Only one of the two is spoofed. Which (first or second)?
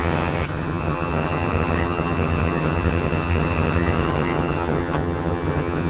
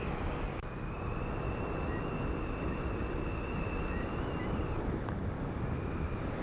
first